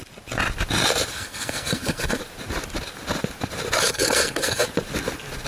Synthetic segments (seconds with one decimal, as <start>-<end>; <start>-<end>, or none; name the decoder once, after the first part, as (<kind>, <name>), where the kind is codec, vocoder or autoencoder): 1.1-2.2 (codec, SNAC); 3.8-4.7